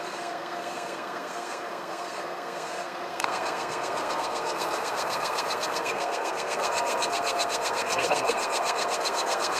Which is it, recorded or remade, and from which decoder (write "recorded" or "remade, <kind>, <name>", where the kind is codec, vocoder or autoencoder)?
remade, codec, SNAC